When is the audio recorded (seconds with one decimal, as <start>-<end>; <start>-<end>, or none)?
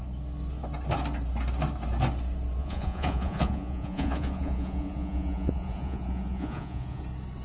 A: 0.0-2.6; 7.0-7.4